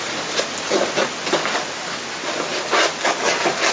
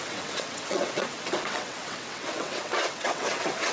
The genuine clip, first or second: first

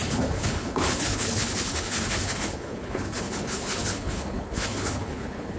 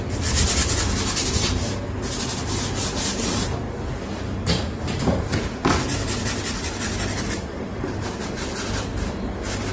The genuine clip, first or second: second